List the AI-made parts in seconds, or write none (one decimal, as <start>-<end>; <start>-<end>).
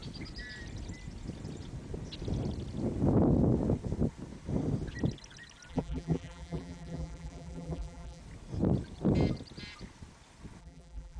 5.7-8.2; 10.6-11.2